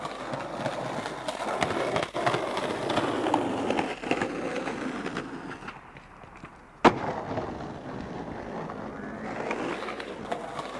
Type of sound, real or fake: real